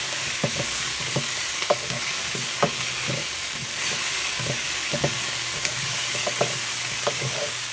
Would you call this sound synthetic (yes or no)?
yes